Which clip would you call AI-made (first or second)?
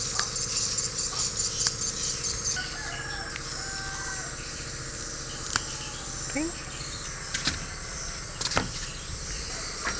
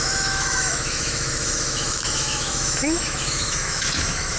second